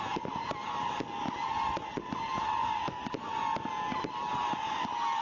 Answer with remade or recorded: recorded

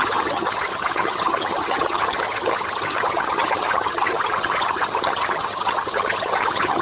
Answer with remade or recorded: remade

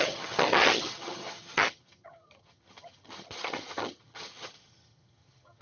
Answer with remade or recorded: remade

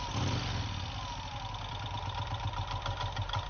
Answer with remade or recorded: recorded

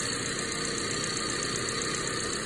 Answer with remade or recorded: recorded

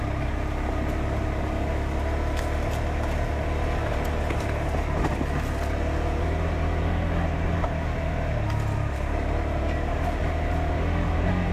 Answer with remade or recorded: recorded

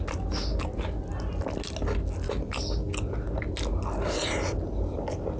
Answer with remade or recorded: recorded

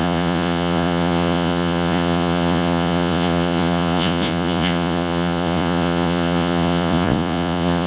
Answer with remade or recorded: remade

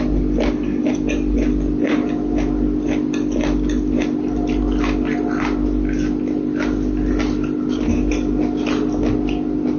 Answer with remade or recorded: recorded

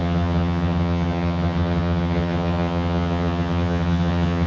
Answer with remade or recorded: remade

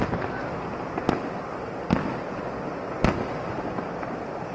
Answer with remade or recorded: recorded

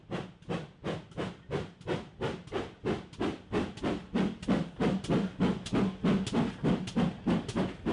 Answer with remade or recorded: recorded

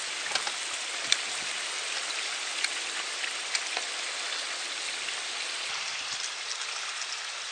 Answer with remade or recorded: recorded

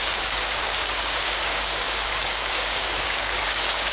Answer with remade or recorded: remade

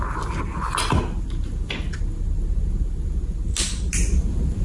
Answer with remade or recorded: recorded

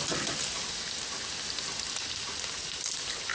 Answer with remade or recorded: recorded